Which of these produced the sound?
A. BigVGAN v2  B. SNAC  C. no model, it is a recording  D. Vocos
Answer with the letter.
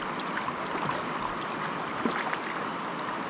C